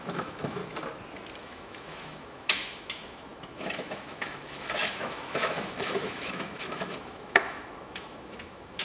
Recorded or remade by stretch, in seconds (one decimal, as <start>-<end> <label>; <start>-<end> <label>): 0.0-0.6 remade; 0.6-1.4 recorded; 1.4-8.8 remade